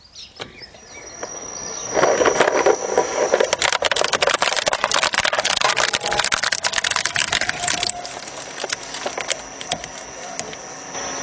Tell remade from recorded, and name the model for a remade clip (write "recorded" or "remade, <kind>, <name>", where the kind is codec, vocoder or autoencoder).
recorded